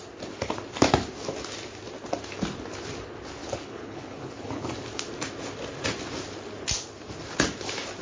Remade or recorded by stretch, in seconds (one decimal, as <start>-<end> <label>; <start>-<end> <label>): 0.0-3.4 recorded; 3.4-4.7 remade; 4.7-8.0 recorded